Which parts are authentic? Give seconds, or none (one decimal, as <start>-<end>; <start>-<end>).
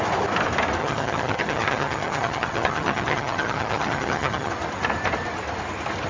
0.0-0.8; 4.5-6.1